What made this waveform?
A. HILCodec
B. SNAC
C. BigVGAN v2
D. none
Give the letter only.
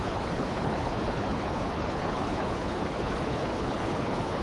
A